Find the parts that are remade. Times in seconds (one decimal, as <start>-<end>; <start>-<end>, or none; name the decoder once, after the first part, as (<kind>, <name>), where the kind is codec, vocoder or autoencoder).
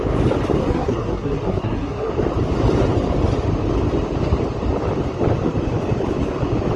0.6-2.1 (codec, SNAC)